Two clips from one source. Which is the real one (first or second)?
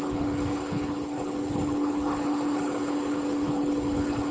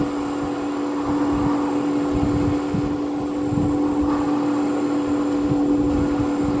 second